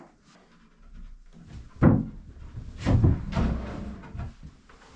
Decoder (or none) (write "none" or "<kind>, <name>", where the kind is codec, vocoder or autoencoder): none